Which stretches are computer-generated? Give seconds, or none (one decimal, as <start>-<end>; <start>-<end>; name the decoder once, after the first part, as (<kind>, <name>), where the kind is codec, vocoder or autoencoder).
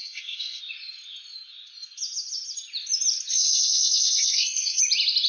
0.0-0.6 (codec, SNAC); 3.3-4.8